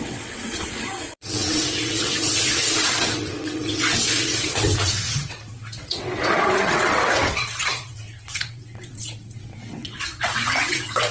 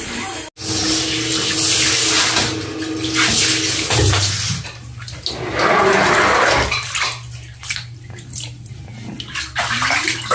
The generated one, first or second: first